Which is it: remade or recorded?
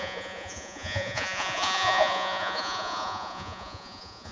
remade